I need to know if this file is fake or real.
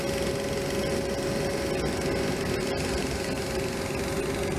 real